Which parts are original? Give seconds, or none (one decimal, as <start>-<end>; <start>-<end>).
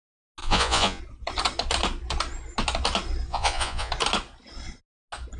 0.0-0.4; 1.0-3.3; 3.9-5.4